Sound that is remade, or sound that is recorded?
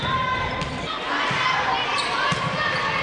recorded